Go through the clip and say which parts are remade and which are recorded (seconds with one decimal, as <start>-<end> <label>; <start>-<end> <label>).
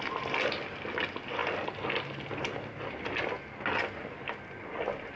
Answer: 0.0-5.2 recorded